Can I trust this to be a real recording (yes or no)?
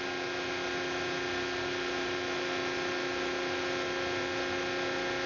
yes